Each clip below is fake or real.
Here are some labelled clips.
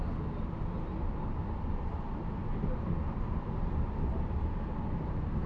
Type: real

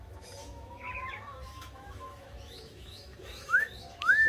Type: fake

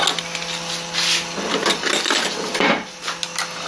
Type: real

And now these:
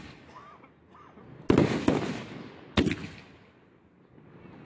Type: real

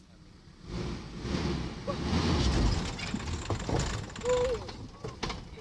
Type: real